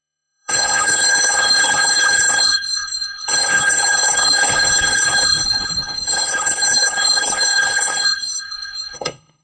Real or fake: fake